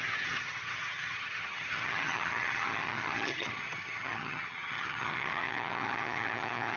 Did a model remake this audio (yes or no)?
yes